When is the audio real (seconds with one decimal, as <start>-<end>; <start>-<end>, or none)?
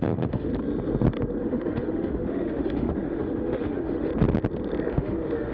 0.5-1.4; 4.1-4.9